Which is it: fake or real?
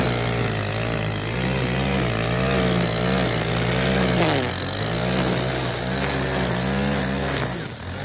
real